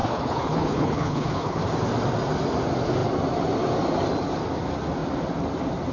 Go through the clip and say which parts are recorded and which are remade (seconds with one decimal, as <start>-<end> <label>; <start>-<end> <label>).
0.0-1.6 remade; 1.6-5.9 recorded